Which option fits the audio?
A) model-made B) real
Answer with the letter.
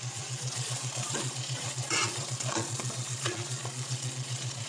A